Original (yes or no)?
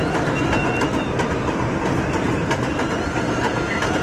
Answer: yes